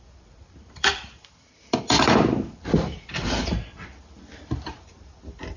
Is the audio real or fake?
fake